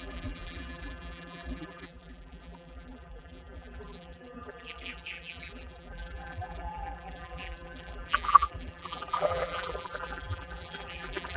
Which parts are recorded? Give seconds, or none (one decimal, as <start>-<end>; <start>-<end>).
none